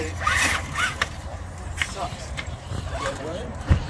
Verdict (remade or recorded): remade